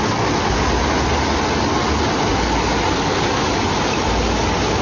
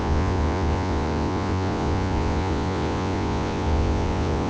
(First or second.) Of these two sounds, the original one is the first